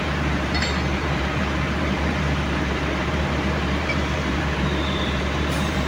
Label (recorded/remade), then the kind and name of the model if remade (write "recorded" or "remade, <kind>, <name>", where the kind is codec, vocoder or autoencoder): remade, vocoder, BigVGAN v2